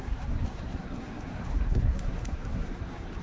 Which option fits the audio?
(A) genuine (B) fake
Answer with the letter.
B